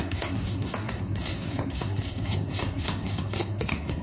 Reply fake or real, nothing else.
fake